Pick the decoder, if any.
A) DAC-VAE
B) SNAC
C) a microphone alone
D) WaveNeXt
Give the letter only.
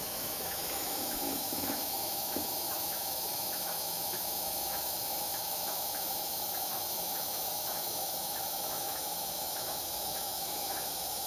A